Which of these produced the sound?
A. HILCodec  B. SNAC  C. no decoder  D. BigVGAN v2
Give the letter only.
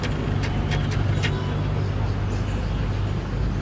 C